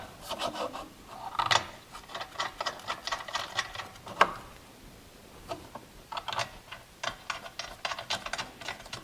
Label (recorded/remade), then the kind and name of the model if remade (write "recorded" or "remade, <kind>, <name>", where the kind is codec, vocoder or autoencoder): recorded